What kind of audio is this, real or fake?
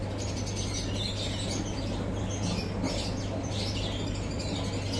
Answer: real